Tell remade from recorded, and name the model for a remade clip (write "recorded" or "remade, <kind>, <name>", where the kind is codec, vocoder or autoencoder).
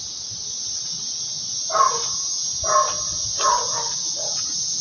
recorded